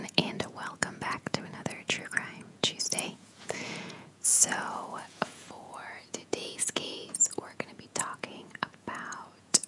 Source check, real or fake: fake